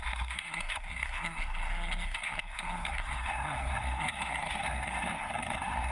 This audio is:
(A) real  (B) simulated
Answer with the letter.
B